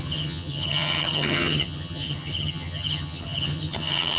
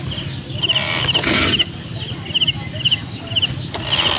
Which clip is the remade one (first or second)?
first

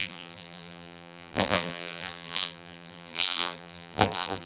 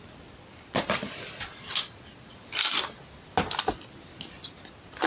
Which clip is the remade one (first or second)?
first